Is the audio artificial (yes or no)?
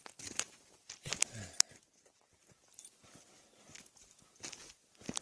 no